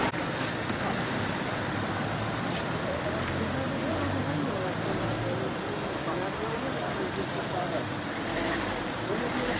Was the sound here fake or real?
real